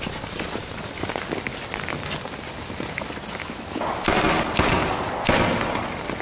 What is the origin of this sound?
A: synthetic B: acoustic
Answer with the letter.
B